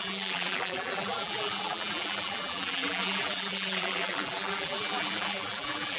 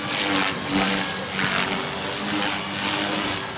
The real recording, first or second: second